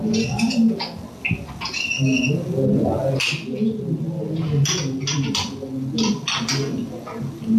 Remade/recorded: recorded